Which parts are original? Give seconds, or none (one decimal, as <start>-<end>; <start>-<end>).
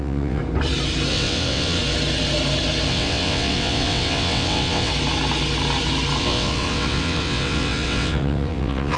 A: 0.4-1.1; 1.8-2.9; 4.9-6.2